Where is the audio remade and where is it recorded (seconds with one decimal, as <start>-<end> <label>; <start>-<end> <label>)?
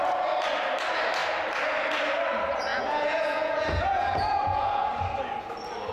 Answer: 0.0-2.7 recorded; 2.7-4.9 remade; 4.9-5.9 recorded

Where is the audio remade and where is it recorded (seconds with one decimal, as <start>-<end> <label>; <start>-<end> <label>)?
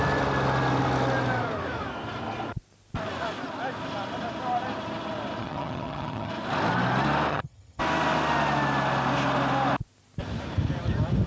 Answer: 0.0-5.4 recorded; 5.4-6.3 remade; 6.3-7.3 recorded; 7.3-7.8 remade; 7.8-11.3 recorded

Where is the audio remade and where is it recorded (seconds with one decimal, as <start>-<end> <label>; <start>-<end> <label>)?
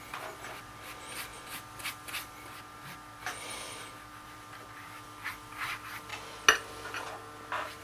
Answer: 0.0-6.1 remade; 6.1-7.8 recorded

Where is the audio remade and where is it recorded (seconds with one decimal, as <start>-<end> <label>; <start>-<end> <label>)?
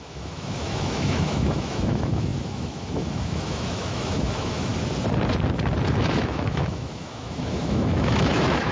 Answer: 0.0-4.7 remade; 4.7-5.9 recorded; 5.9-8.7 remade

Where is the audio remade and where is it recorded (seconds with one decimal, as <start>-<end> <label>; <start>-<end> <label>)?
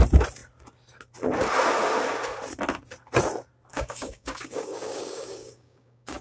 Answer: 0.0-3.7 recorded; 3.7-6.2 remade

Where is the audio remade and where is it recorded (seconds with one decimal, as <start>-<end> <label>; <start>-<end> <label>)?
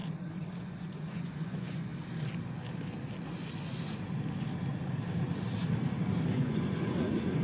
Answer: 0.0-0.6 recorded; 0.6-1.9 remade; 1.9-6.3 recorded; 6.3-7.4 remade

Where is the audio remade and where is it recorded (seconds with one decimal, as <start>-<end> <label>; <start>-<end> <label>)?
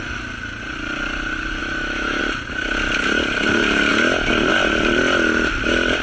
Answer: 0.0-1.6 recorded; 1.6-2.2 remade; 2.2-6.0 recorded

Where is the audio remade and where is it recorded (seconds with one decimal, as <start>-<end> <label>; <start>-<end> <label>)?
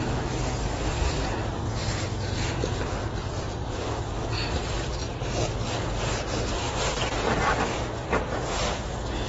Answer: 0.0-3.2 recorded; 3.2-3.7 remade; 3.7-9.3 recorded